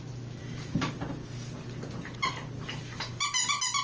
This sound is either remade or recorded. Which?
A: recorded